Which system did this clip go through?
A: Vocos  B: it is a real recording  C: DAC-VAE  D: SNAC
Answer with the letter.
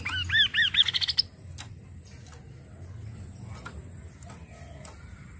B